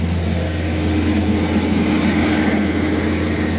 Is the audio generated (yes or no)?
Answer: no